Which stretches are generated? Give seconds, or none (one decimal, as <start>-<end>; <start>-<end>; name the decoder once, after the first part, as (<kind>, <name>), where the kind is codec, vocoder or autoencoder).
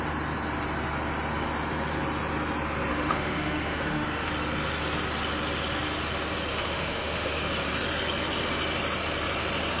2.9-4.3 (autoencoder, DAC-VAE); 6.5-7.5